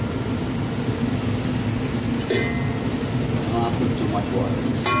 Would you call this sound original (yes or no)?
yes